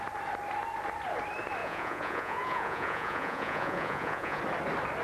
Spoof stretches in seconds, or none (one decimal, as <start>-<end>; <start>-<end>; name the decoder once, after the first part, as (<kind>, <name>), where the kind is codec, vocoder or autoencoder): 1.6-4.4 (vocoder, Vocos)